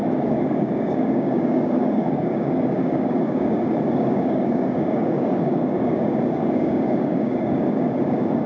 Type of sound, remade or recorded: remade